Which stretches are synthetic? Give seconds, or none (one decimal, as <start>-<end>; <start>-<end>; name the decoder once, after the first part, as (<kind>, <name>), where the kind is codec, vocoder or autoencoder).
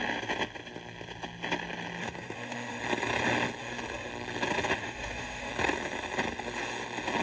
2.0-2.8 (autoencoder, DAC-VAE); 3.6-4.1; 4.8-5.5